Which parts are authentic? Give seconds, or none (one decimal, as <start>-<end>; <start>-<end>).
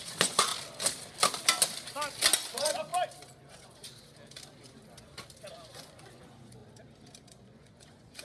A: 0.5-2.5; 2.9-3.4; 3.8-5.5; 6.6-7.3